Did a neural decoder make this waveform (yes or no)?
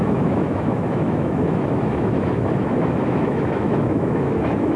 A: yes